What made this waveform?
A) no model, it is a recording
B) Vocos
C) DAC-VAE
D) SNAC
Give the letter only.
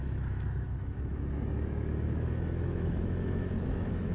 C